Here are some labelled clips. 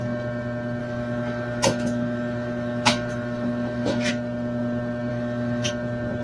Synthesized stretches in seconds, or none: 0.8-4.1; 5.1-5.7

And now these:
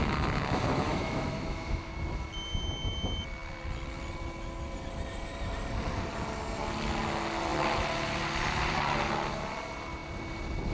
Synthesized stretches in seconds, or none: 0.7-1.9

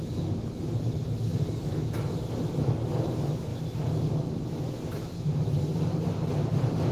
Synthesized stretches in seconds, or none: 0.0-5.7

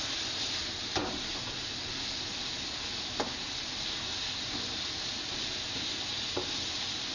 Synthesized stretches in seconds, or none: none

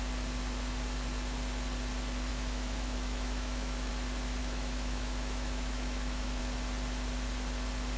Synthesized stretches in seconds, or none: 2.3-3.9; 4.4-6.4

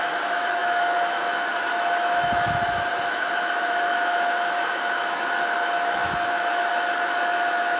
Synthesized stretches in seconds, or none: 0.0-7.8